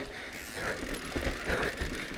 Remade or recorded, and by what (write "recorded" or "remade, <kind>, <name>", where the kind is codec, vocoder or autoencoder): recorded